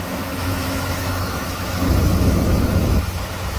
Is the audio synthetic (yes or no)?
yes